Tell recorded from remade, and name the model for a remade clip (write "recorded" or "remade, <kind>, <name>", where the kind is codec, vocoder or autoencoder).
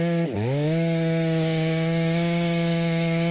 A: remade, codec, DAC